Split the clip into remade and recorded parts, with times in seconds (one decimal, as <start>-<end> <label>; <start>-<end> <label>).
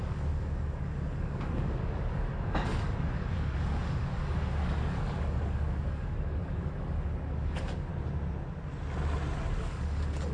0.0-7.9 remade; 7.9-9.6 recorded; 9.6-10.3 remade